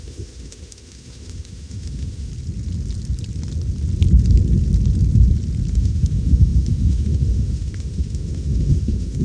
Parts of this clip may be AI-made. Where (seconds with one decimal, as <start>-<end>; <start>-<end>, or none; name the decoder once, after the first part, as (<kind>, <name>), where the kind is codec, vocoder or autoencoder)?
0.0-2.3 (autoencoder, DAC-VAE); 5.7-9.2